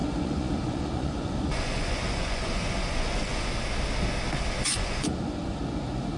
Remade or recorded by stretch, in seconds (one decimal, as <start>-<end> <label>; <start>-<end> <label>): 0.0-3.5 remade; 3.5-4.6 recorded; 4.6-5.6 remade; 5.6-6.2 recorded